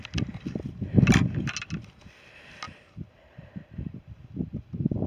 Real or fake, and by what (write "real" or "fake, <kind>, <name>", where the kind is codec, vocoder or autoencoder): real